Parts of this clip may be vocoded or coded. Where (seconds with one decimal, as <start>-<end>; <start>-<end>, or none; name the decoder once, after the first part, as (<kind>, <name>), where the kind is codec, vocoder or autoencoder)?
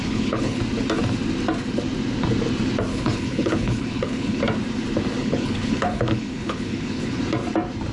0.0-0.6 (codec, HILCodec); 2.9-4.4; 5.2-7.2